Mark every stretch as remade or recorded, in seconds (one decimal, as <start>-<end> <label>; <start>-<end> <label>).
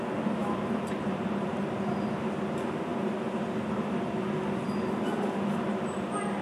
0.0-0.4 recorded; 0.4-1.7 remade; 1.7-6.4 recorded